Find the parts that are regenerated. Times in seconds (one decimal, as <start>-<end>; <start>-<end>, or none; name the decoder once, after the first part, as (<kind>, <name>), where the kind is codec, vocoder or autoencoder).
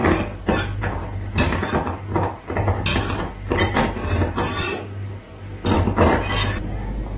none